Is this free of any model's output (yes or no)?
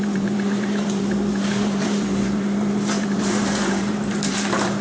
no